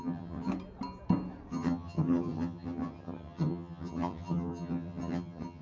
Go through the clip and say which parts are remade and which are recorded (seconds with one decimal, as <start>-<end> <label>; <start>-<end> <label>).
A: 0.0-0.5 remade; 0.5-1.5 recorded; 1.5-5.6 remade